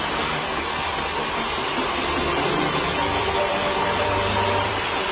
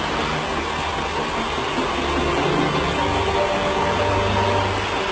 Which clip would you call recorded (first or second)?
second